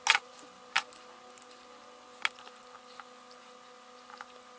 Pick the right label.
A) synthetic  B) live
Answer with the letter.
B